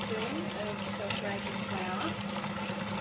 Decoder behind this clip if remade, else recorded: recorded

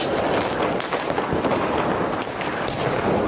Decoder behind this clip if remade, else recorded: recorded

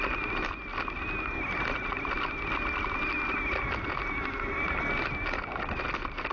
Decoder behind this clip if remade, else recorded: recorded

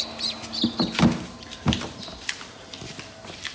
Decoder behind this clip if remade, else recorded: recorded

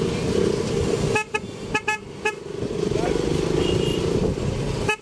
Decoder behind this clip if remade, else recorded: recorded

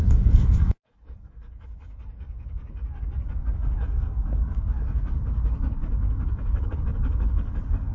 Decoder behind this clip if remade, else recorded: remade, codec, DAC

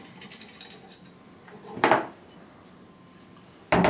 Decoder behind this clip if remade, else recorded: recorded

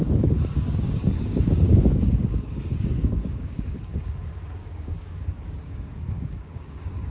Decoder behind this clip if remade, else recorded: remade, codec, DAC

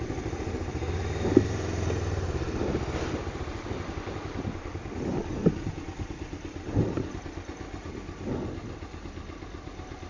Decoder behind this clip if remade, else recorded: recorded